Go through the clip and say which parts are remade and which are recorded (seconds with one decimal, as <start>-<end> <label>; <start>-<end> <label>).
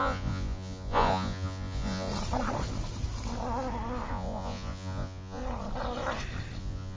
0.0-2.1 remade; 2.1-4.1 recorded; 4.1-5.4 remade; 5.4-6.6 recorded; 6.6-7.0 remade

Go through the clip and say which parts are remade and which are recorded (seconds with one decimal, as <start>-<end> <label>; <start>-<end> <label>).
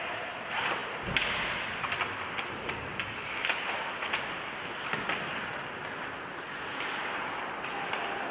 0.0-8.3 recorded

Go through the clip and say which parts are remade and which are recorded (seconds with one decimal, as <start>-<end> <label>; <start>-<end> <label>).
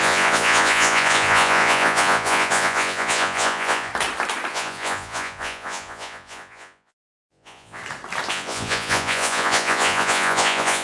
0.0-3.9 remade; 3.9-4.5 recorded; 4.5-7.8 remade; 7.8-8.3 recorded; 8.3-10.8 remade